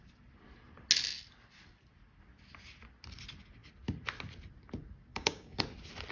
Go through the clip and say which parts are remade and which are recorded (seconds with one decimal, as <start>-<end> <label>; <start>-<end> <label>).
0.0-5.1 recorded; 5.1-5.6 remade; 5.6-6.1 recorded